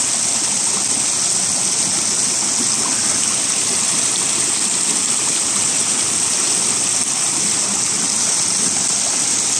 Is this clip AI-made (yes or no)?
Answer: no